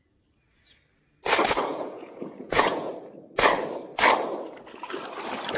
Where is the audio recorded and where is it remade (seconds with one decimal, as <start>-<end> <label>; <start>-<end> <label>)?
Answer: 0.0-1.7 recorded; 1.7-2.9 remade; 2.9-5.6 recorded